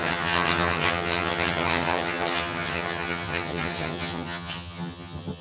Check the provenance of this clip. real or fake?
fake